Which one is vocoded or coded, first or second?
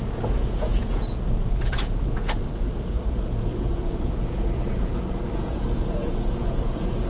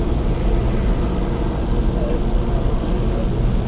first